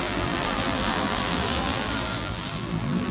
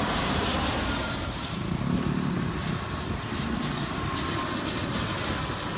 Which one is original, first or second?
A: second